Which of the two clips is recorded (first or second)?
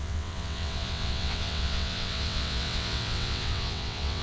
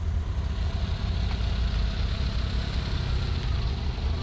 second